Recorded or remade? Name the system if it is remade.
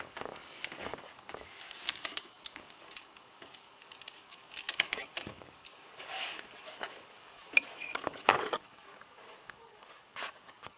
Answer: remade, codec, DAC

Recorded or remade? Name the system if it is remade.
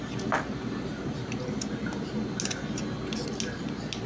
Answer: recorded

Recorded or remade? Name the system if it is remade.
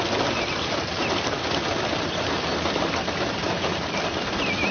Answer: recorded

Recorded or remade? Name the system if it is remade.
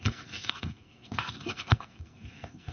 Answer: remade, codec, SNAC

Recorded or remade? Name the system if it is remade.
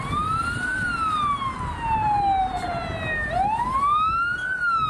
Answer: recorded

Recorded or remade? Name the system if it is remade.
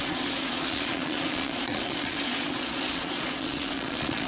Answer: remade, vocoder, Vocos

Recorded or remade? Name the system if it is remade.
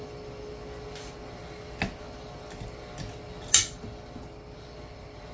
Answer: recorded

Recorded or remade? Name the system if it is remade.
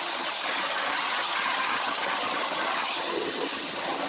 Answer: remade, vocoder, HiFi-GAN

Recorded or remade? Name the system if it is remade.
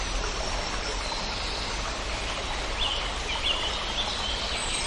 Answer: recorded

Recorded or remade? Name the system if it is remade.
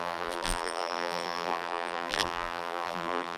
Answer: remade, vocoder, BigVGAN v2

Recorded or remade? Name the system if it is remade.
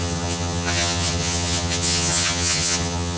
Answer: remade, vocoder, HiFi-GAN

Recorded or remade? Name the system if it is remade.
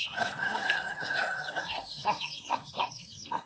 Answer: remade, codec, SNAC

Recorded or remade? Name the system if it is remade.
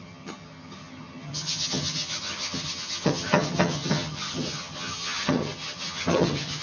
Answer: remade, vocoder, HiFi-GAN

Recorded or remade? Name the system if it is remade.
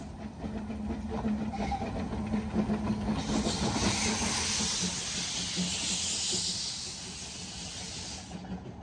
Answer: recorded